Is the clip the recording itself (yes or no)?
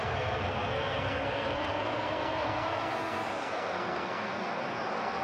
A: no